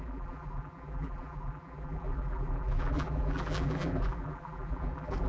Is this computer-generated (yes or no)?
yes